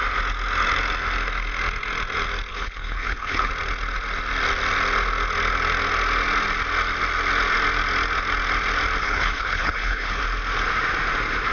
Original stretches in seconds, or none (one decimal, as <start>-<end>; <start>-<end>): 0.0-2.5; 3.5-9.0; 10.2-11.5